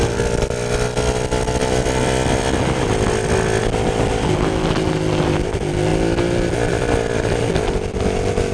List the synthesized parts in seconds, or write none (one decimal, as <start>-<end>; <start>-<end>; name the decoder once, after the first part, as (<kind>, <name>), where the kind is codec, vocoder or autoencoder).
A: none